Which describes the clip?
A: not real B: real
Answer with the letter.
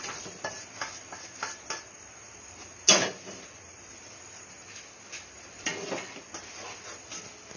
B